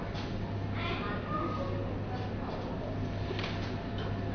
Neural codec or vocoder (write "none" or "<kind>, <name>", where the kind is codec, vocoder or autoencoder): none